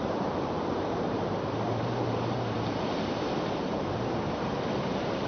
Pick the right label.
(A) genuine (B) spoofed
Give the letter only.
B